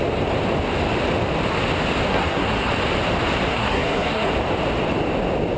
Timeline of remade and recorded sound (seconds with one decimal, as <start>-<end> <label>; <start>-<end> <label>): 0.0-2.1 recorded; 2.1-2.7 remade; 2.7-3.5 recorded; 3.5-4.3 remade; 4.3-5.6 recorded